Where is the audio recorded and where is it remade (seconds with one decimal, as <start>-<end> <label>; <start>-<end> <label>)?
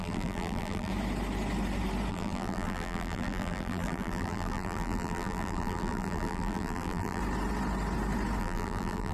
0.0-0.9 remade; 0.9-2.1 recorded; 2.1-7.2 remade; 7.2-8.4 recorded; 8.4-9.1 remade